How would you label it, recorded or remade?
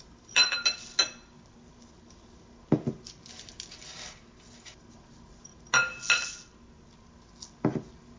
recorded